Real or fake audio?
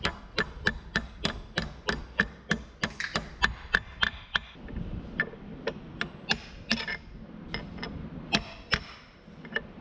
real